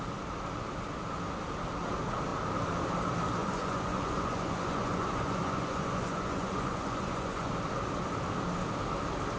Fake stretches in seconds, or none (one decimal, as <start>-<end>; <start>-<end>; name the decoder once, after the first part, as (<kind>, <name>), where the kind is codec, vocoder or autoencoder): 3.4-7.5 (vocoder, Vocos)